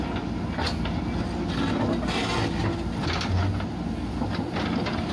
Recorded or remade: recorded